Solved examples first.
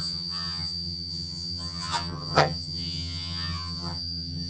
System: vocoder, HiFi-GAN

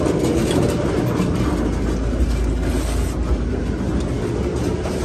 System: none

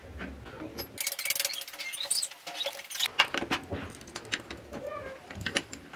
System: none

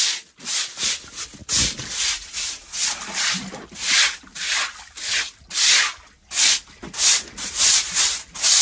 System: none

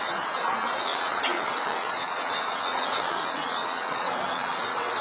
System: vocoder, WaveNeXt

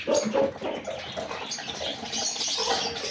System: none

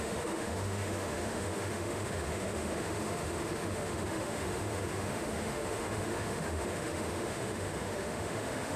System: autoencoder, DAC-VAE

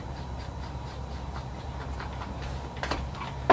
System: none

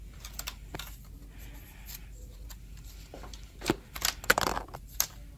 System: none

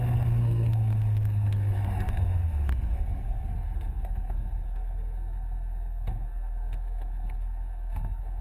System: codec, SNAC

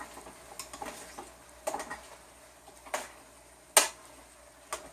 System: none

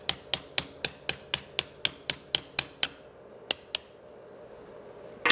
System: none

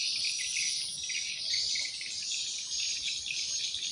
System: none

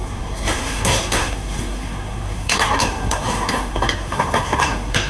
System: codec, SNAC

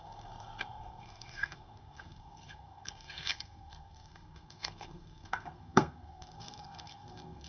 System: codec, SNAC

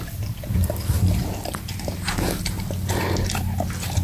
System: none